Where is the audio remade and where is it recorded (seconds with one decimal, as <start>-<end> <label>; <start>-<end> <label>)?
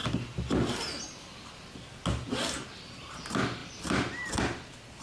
0.0-1.5 remade; 1.5-3.6 recorded; 3.6-4.4 remade; 4.4-5.0 recorded